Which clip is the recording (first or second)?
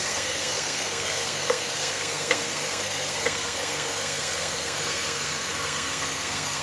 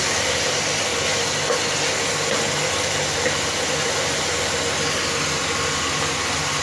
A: second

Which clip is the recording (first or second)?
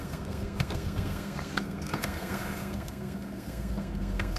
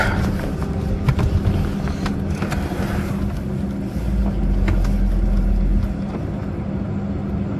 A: second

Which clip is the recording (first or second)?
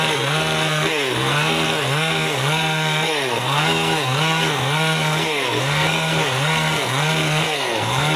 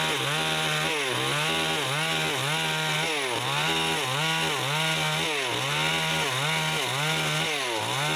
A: second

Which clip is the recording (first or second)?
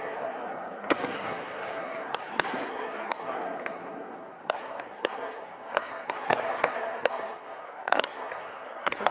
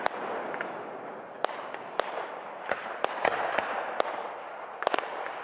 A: second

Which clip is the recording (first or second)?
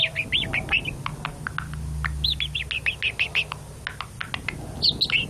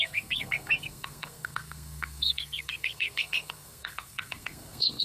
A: first